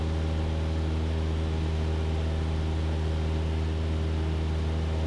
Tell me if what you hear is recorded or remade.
recorded